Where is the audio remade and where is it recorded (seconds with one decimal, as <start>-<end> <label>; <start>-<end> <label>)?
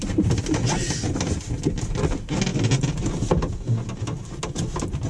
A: 0.0-5.1 recorded